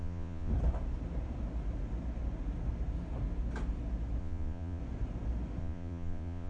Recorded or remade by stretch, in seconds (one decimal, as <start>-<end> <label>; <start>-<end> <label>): 0.0-0.5 remade; 0.5-4.2 recorded; 4.2-4.8 remade; 4.8-5.6 recorded; 5.6-6.5 remade

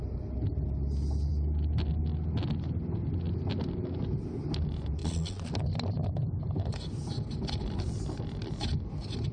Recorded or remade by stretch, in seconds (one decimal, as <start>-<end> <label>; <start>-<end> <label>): 0.0-5.0 recorded; 5.0-5.5 remade; 5.5-9.3 recorded

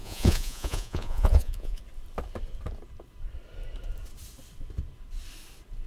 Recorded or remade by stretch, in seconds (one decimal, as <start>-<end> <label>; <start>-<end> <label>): 0.0-1.8 remade; 1.8-5.9 recorded

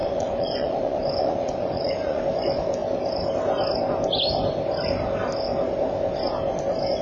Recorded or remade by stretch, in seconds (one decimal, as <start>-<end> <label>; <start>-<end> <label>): 0.0-2.2 remade; 2.2-7.0 recorded

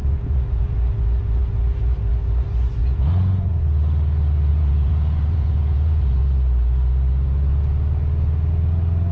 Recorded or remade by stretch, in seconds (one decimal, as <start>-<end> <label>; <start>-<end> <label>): 0.0-0.7 remade; 0.7-2.8 recorded; 2.8-3.5 remade; 3.5-4.5 recorded; 4.5-6.2 remade; 6.2-9.1 recorded

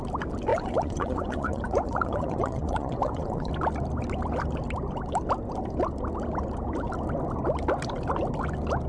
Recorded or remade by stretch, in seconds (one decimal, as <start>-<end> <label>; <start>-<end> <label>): 0.0-0.5 recorded; 0.5-3.5 remade; 3.5-8.9 recorded

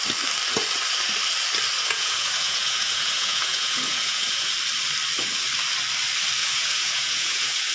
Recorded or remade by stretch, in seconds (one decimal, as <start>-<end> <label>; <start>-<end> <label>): 0.0-1.8 recorded; 1.8-4.5 remade; 4.5-6.4 recorded; 6.4-7.7 remade

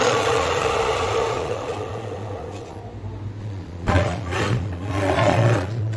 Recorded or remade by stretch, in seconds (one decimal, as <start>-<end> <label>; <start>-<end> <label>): 0.0-2.8 remade; 2.8-3.4 recorded; 3.4-6.0 remade